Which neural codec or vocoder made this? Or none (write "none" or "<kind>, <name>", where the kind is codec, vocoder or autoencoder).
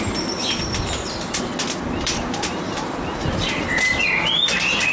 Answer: none